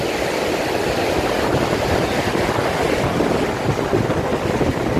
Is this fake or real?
real